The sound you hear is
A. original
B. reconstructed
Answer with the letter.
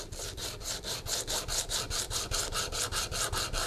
A